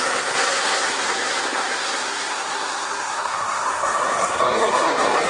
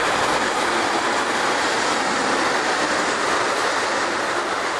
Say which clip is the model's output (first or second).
first